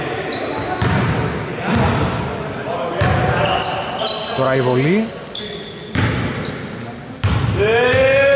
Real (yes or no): yes